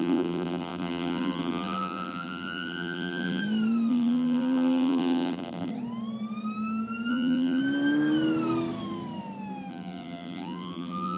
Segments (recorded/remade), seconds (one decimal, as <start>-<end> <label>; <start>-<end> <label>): 0.0-3.4 remade; 3.4-3.9 recorded; 3.9-5.7 remade; 5.7-7.1 recorded; 7.1-7.6 remade; 7.6-9.7 recorded; 9.7-11.2 remade